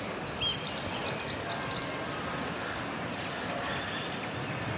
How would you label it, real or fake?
real